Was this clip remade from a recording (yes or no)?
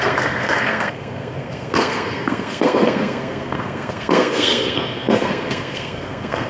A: yes